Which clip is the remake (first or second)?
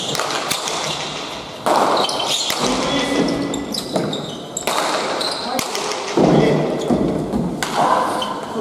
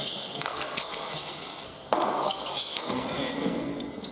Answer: second